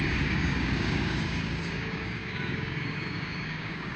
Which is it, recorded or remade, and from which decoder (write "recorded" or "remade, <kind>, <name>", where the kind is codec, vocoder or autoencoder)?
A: remade, codec, DAC